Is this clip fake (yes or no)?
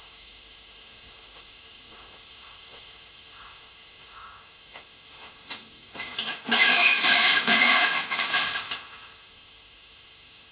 yes